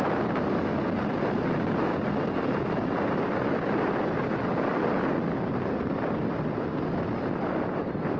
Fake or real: real